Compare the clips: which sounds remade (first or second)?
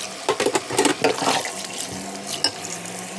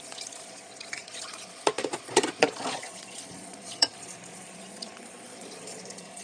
second